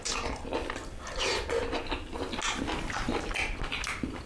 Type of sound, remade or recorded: recorded